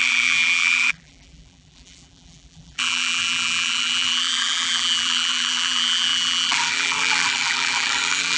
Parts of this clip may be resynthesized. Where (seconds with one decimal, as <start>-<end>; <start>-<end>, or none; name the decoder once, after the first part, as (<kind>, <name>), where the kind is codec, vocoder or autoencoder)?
0.0-8.4 (vocoder, BigVGAN v2)